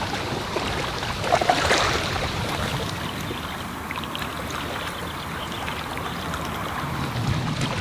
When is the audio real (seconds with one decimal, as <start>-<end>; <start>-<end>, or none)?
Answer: 0.0-1.4; 5.9-6.6; 7.2-7.8